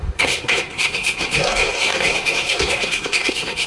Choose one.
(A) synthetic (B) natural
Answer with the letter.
A